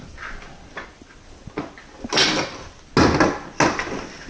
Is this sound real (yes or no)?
yes